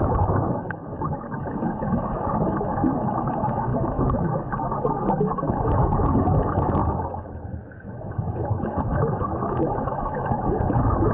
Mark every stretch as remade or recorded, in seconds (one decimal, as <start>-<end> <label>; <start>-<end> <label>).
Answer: 0.0-11.1 remade